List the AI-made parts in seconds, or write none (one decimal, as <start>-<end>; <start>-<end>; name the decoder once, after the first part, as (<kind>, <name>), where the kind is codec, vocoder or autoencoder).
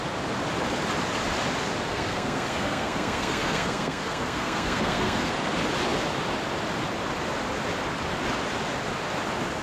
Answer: 1.9-5.3 (codec, SNAC)